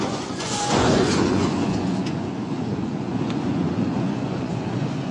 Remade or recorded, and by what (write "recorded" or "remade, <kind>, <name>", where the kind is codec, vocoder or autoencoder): remade, vocoder, Vocos